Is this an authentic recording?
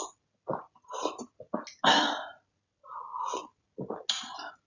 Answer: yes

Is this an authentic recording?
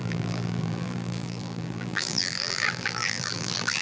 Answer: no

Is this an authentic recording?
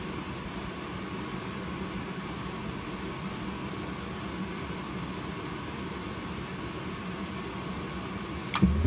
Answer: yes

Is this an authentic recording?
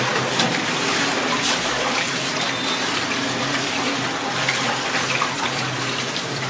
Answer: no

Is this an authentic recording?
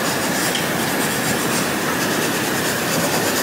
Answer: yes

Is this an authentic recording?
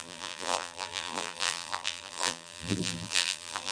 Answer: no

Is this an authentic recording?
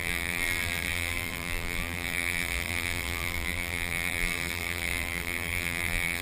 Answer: no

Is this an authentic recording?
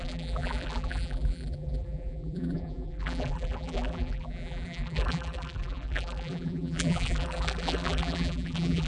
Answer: no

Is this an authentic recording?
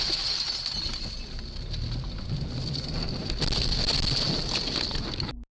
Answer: yes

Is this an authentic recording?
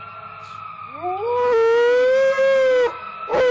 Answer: yes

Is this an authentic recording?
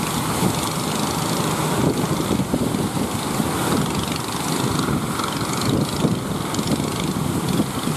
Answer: yes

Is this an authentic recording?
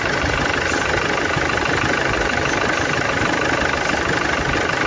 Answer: yes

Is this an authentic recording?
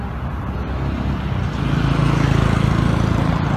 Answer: yes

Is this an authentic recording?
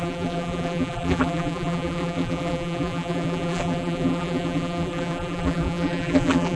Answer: no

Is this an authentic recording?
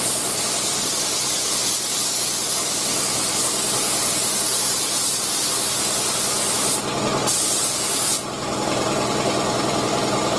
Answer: yes